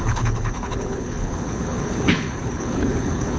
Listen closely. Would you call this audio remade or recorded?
remade